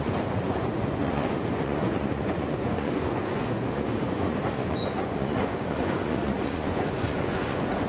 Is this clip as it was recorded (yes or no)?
no